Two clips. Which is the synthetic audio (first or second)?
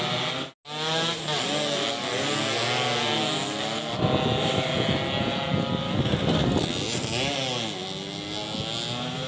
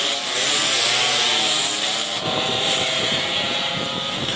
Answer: second